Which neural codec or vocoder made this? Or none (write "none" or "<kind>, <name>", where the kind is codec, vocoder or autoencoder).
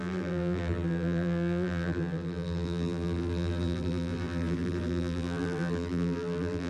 vocoder, BigVGAN v2